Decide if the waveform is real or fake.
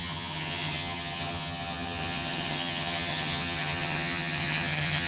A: fake